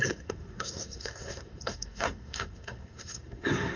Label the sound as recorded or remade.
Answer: remade